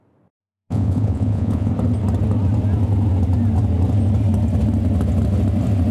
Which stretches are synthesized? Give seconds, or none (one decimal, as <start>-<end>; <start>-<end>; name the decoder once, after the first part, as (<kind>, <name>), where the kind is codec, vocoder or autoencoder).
0.4-1.7 (vocoder, Vocos)